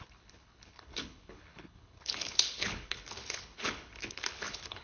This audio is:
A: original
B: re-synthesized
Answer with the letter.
B